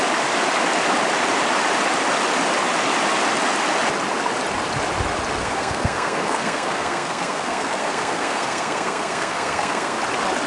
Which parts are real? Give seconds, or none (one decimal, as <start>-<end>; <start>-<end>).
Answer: 0.0-5.4; 10.0-10.5